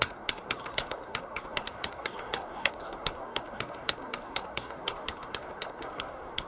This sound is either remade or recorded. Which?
remade